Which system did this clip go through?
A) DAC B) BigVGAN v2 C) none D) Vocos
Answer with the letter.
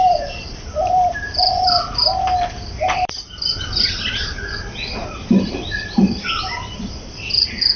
B